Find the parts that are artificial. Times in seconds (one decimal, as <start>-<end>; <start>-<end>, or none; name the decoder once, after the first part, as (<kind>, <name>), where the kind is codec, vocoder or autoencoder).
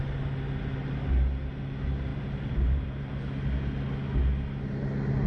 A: 2.1-3.1 (vocoder, BigVGAN v2)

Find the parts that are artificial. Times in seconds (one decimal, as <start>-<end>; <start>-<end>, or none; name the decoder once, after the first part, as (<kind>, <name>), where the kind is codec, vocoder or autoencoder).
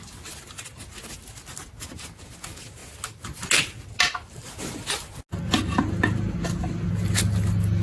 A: none